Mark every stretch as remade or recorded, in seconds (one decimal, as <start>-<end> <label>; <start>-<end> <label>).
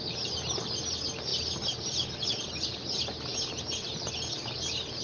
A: 0.0-5.0 recorded